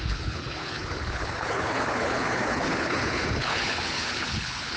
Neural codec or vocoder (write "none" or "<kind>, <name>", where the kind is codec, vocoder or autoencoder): codec, HILCodec